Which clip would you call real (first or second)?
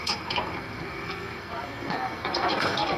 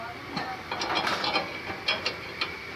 second